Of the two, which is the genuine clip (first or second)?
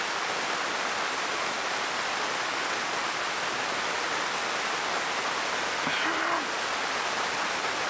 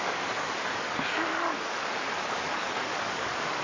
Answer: first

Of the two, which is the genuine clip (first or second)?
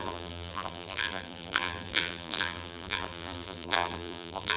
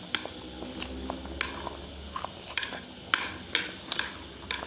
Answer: second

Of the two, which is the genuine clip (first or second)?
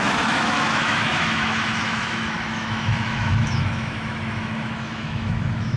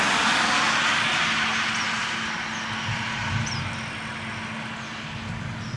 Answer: second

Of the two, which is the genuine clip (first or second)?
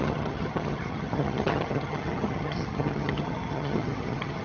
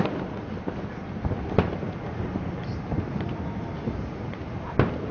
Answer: second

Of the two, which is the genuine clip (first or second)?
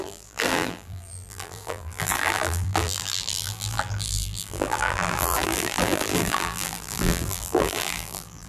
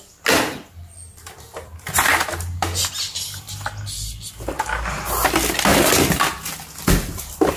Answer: second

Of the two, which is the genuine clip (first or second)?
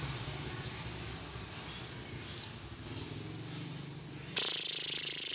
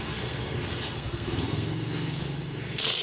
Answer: first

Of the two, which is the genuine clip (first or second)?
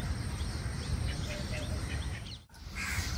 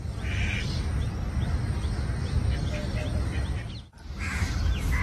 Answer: second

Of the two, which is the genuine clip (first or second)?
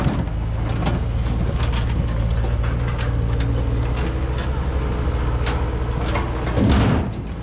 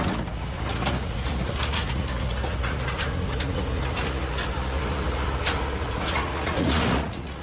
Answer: first